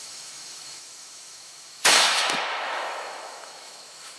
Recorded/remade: remade